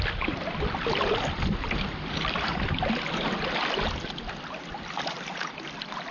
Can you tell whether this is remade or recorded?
recorded